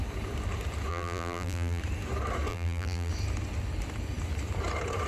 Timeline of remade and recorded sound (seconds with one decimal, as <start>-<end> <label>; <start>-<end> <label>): 0.0-0.9 recorded; 0.9-1.8 remade; 1.8-2.5 recorded; 2.5-3.1 remade; 3.1-5.1 recorded